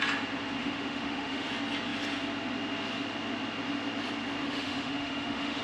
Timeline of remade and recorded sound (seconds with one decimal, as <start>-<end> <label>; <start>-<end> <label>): 0.0-0.6 recorded; 0.6-1.5 remade; 1.5-4.4 recorded; 4.4-5.6 remade